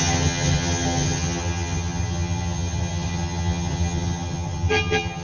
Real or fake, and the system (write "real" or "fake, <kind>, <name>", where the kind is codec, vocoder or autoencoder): fake, vocoder, HiFi-GAN